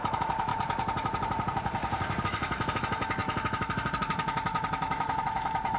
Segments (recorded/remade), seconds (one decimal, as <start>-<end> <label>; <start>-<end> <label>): 0.0-0.5 remade; 0.5-2.2 recorded; 2.2-5.8 remade